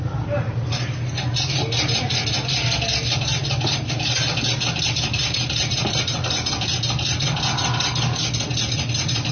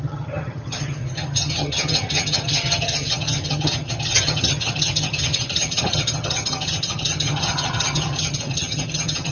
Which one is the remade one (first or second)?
second